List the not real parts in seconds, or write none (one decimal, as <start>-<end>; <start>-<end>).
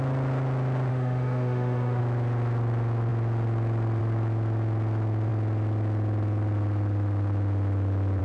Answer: 0.9-2.0